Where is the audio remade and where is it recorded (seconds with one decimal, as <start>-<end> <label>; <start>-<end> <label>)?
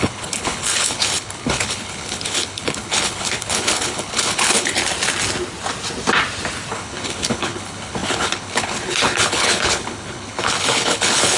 0.0-4.8 remade; 4.8-6.7 recorded; 6.7-11.4 remade